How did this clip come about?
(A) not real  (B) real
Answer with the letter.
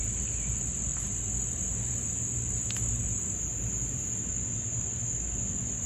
B